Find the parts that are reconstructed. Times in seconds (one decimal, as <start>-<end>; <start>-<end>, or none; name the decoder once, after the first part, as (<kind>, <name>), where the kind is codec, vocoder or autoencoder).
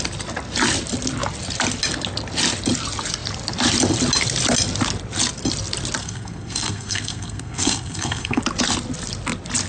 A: 6.0-8.4 (codec, SNAC)